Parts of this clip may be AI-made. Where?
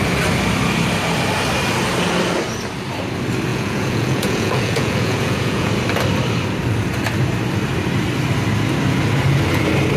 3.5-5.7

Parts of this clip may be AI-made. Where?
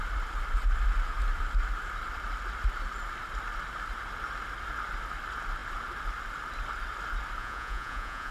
7.4-8.3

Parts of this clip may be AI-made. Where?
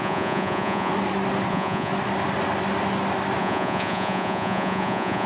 0.0-0.9; 1.5-1.9; 3.4-5.3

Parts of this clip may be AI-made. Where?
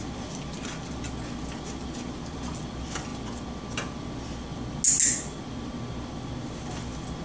none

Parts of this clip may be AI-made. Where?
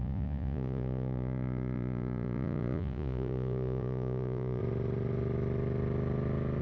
0.0-4.6